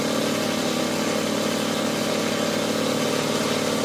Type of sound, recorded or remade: recorded